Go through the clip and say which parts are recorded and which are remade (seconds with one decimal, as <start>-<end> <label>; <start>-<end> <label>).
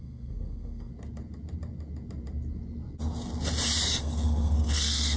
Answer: 0.0-0.9 remade; 0.9-4.0 recorded; 4.0-5.2 remade